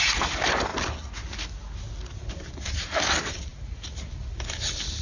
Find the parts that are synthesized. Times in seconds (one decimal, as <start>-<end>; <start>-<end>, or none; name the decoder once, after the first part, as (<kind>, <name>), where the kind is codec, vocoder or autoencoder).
none

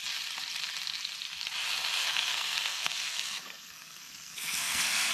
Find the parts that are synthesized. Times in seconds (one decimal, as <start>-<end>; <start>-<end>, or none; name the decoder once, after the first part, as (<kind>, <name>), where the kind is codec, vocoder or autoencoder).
2.0-5.1 (codec, SNAC)

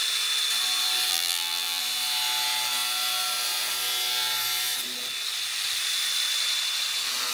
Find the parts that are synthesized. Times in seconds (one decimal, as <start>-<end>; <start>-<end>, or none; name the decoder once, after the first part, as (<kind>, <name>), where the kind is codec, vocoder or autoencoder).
1.1-1.8 (vocoder, BigVGAN v2)

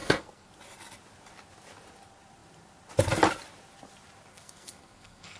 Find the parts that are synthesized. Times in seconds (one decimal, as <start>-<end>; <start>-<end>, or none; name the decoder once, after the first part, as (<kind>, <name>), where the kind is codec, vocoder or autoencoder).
0.0-0.5 (codec, SNAC); 4.3-5.4

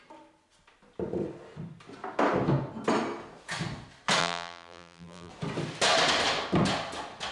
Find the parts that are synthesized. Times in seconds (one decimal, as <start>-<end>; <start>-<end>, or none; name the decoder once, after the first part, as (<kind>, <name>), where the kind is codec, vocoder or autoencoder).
4.2-5.3 (vocoder, BigVGAN v2)